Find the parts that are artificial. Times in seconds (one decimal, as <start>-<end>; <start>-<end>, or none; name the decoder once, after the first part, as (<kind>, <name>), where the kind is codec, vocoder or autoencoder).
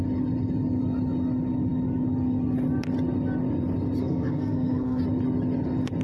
4.0-5.0 (codec, SNAC)